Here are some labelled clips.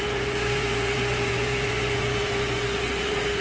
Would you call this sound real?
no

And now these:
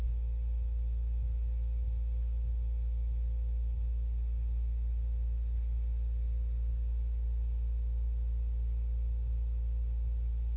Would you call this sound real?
yes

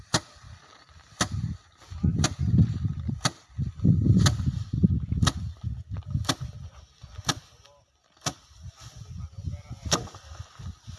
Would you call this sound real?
yes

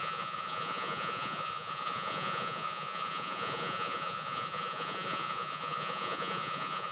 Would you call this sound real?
no